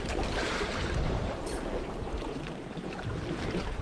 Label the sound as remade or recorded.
remade